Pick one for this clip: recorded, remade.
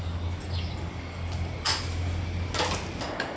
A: recorded